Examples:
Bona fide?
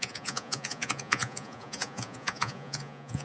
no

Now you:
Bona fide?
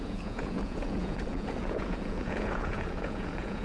no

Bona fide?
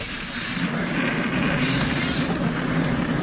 yes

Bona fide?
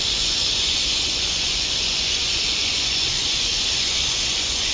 no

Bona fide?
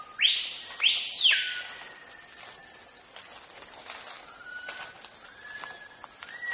yes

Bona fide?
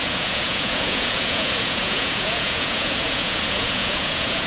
no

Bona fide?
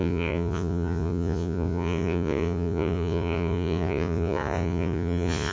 no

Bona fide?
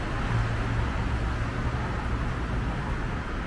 yes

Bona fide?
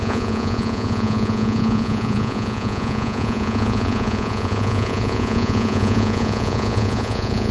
no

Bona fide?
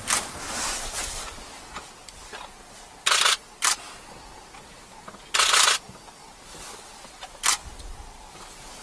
yes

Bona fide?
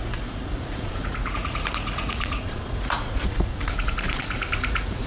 no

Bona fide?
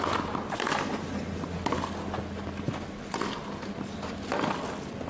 yes